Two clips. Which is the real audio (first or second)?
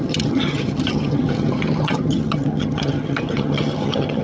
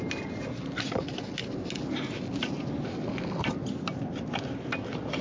second